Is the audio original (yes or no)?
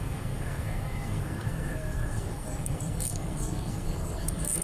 no